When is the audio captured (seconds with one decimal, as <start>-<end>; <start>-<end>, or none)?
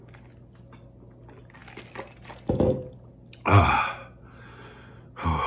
0.0-5.5